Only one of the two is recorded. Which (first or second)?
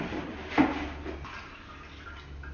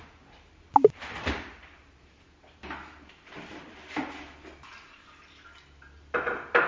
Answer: first